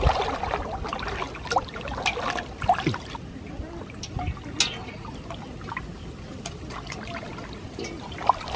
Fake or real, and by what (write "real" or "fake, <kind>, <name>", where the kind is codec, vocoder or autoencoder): real